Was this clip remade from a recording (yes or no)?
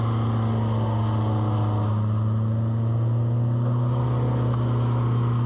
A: no